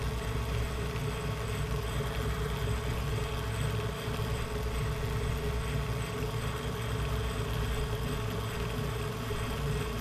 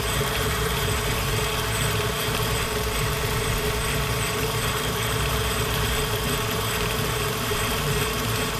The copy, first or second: second